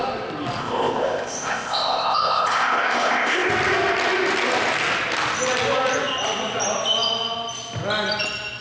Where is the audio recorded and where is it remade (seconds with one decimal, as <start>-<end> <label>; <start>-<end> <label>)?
0.0-0.6 recorded; 0.6-3.5 remade; 3.5-8.6 recorded